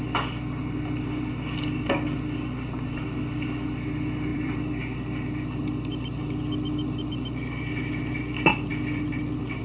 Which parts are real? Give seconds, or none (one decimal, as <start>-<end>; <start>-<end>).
0.0-4.3; 4.8-9.6